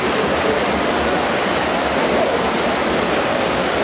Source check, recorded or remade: recorded